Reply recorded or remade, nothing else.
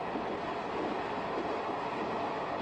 recorded